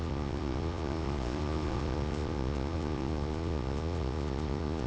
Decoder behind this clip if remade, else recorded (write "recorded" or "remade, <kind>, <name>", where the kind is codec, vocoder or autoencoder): remade, vocoder, Vocos